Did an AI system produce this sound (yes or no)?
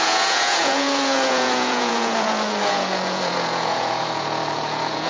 yes